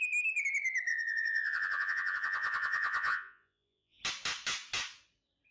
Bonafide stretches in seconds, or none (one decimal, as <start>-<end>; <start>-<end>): 0.0-0.9; 4.0-5.5